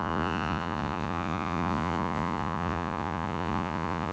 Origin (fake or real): fake